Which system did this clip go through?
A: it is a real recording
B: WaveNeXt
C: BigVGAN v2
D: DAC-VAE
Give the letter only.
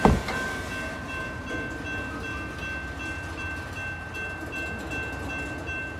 A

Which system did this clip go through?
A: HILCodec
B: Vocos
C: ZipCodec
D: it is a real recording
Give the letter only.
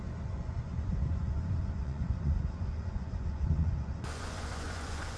B